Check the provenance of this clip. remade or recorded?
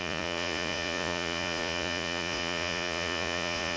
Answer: remade